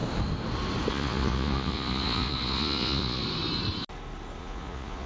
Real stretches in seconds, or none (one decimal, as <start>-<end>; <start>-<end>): 0.0-0.9; 3.2-4.4